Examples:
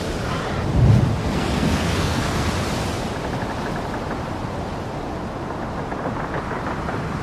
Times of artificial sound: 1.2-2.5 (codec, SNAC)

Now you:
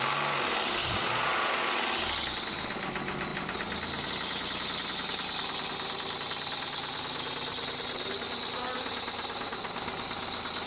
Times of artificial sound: 0.8-1.6 (vocoder, Vocos)

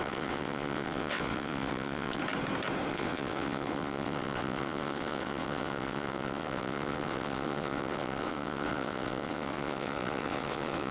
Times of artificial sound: 0.0-2.2 (vocoder, WaveNeXt); 2.9-10.9